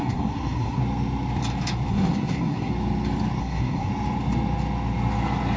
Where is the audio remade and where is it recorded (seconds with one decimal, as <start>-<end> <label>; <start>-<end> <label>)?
0.0-0.8 remade; 0.8-1.9 recorded; 1.9-2.7 remade; 2.7-3.4 recorded; 3.4-3.9 remade; 3.9-5.6 recorded